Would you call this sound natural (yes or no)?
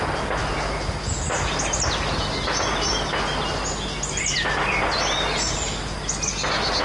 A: yes